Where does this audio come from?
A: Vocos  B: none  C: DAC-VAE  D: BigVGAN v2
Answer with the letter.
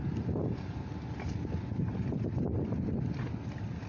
B